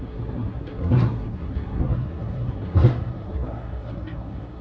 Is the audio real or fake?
fake